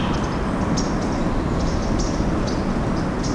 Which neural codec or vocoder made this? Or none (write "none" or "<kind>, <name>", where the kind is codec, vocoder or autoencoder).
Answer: none